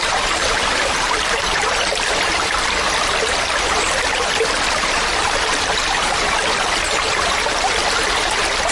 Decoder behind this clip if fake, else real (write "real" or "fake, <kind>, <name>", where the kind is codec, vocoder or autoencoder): fake, vocoder, BigVGAN v2